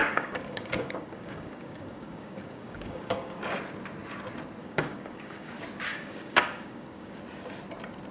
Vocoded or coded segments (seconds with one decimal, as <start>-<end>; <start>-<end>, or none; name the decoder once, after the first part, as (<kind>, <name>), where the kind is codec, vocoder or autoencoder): 0.0-3.4 (codec, DAC); 4.6-5.5; 5.9-7.2